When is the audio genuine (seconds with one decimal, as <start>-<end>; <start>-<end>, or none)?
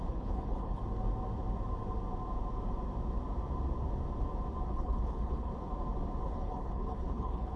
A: 0.8-4.7; 5.5-6.2